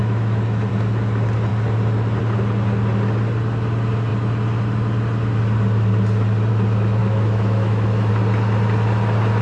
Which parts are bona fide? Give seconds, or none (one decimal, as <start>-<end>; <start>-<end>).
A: 0.7-7.0; 8.1-9.4